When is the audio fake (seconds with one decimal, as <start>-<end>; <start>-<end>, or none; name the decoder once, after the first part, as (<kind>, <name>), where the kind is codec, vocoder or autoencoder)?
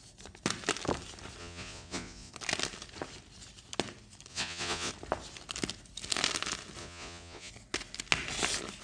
1.4-2.3 (vocoder, Vocos); 4.3-4.9; 6.8-7.5